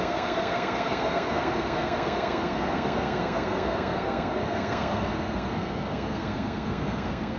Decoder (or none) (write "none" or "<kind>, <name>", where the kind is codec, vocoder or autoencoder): codec, SNAC